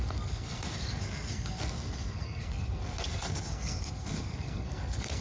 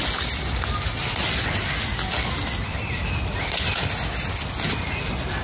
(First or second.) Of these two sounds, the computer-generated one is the first